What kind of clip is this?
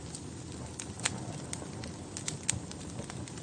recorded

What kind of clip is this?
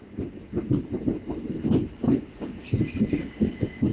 recorded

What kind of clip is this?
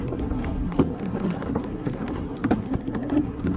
remade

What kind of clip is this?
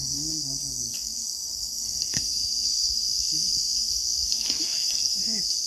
remade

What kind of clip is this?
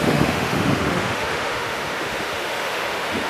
remade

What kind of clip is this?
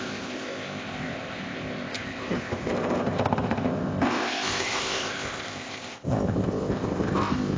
remade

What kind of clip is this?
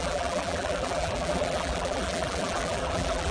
remade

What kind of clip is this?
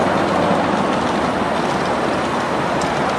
recorded